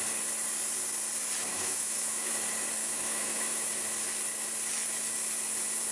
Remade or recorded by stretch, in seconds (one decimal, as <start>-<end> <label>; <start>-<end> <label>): 0.0-1.5 recorded; 1.5-2.3 remade; 2.3-2.8 recorded; 2.8-3.7 remade; 3.7-5.9 recorded